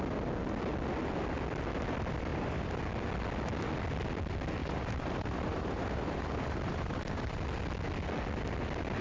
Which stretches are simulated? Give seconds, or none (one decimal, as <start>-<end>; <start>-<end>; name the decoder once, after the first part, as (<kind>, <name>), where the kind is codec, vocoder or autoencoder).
2.3-2.8 (vocoder, BigVGAN v2); 4.6-7.4